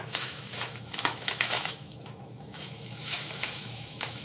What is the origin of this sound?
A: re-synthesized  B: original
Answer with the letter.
A